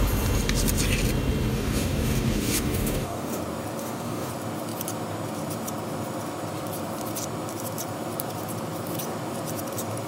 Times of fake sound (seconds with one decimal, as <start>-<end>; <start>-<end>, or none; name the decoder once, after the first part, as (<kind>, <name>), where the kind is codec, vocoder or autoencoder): 1.5-3.4 (codec, DAC); 3.8-4.3